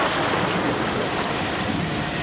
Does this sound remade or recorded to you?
recorded